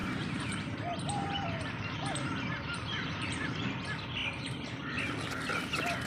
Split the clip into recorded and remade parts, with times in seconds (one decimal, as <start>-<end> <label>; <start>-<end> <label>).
0.0-3.7 remade; 3.7-6.1 recorded